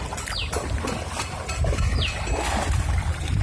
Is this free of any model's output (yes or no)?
yes